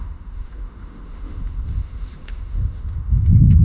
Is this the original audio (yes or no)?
no